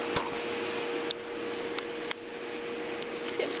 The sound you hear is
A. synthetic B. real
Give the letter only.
B